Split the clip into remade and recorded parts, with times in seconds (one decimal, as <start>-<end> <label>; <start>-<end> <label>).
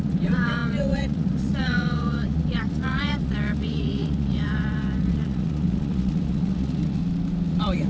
0.0-7.0 remade; 7.0-7.5 recorded; 7.5-7.9 remade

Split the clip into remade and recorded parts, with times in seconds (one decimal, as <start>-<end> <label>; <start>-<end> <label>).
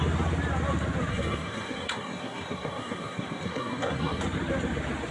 0.0-1.1 recorded; 1.1-4.2 remade; 4.2-5.1 recorded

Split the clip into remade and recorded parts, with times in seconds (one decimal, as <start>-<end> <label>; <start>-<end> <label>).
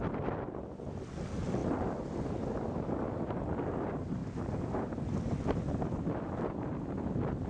0.0-7.5 recorded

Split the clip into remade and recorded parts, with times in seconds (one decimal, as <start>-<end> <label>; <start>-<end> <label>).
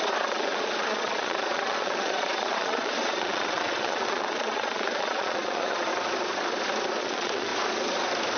0.0-5.9 remade; 5.9-7.0 recorded; 7.0-7.5 remade; 7.5-8.4 recorded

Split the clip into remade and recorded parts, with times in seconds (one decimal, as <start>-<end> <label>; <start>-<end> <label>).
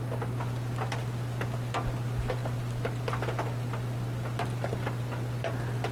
0.0-5.9 recorded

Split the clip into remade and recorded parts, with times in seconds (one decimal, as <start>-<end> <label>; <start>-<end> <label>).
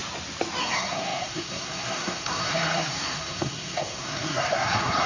0.0-0.6 recorded; 0.6-5.1 remade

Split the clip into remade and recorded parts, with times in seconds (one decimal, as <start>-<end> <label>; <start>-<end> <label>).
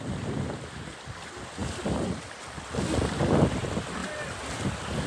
0.0-5.1 recorded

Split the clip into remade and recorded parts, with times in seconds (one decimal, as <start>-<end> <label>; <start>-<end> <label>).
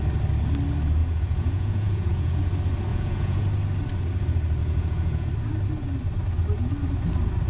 0.0-1.0 recorded; 1.0-2.4 remade; 2.4-2.9 recorded; 2.9-3.4 remade; 3.4-4.6 recorded; 4.6-5.3 remade; 5.3-7.5 recorded